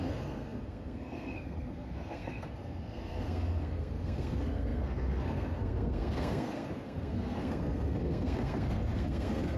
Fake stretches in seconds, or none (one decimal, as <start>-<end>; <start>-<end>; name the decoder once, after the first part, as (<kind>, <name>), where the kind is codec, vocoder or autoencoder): 0.0-9.6 (codec, SNAC)